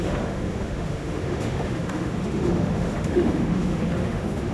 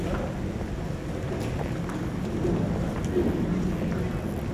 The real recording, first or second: second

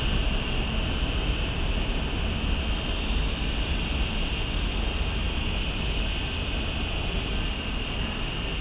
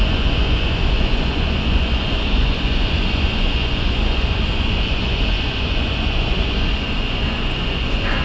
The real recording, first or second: first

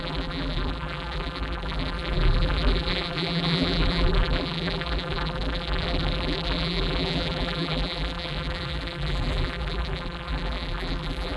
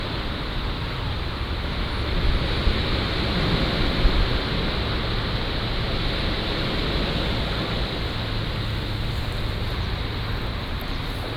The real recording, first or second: second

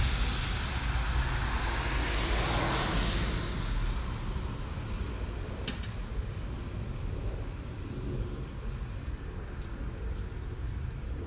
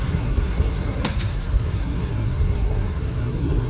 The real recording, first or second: first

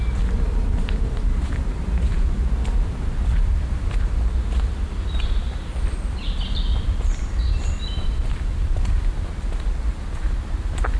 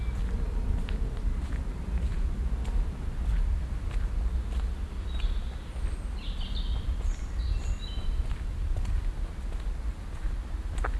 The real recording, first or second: second